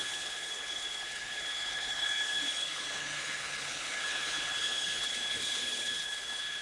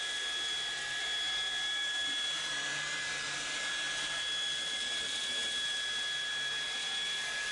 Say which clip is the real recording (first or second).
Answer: second